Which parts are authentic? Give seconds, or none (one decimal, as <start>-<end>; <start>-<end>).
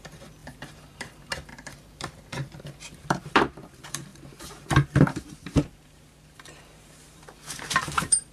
none